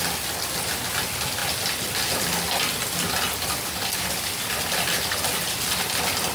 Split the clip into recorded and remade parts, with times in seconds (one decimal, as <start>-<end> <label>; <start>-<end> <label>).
0.0-6.3 recorded